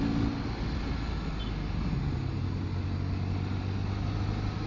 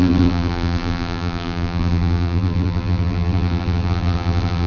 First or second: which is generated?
second